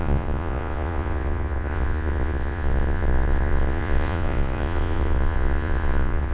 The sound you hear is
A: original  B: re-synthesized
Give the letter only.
B